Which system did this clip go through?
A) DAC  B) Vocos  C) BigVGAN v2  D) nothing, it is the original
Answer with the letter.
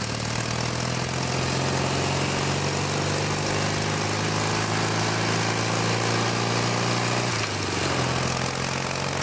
D